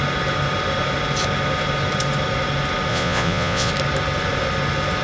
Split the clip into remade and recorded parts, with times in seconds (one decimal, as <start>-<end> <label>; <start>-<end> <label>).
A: 0.0-2.9 recorded; 2.9-3.7 remade; 3.7-5.0 recorded